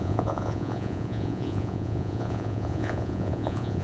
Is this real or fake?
fake